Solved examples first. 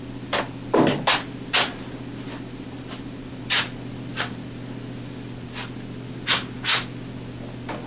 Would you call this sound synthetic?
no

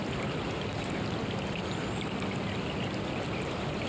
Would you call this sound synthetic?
no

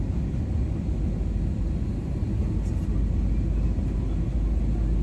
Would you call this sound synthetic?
no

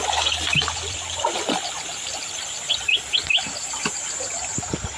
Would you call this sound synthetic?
yes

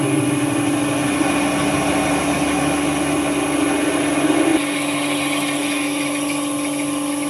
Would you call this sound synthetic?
no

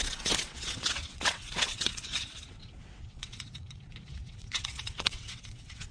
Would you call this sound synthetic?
yes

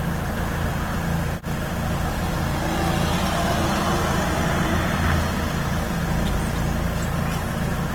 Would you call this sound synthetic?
no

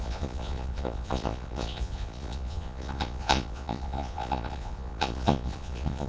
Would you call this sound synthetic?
yes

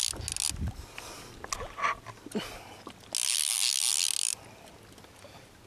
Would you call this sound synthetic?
no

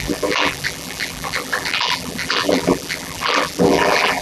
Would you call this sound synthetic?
yes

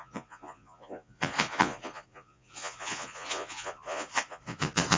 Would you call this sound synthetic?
yes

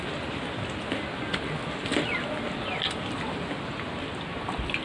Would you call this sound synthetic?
no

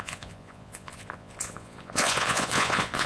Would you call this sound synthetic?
yes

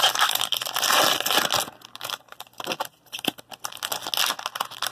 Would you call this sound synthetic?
no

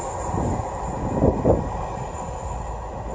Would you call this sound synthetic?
no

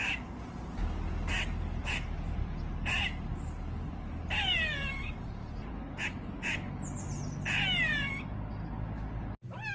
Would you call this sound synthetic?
no